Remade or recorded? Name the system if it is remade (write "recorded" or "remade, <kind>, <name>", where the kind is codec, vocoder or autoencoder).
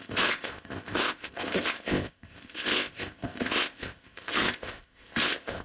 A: remade, codec, ZipCodec